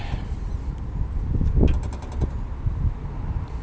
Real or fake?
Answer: real